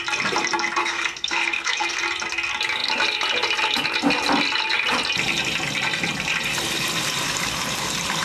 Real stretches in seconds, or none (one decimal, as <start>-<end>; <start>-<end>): 0.0-0.8; 2.0-8.2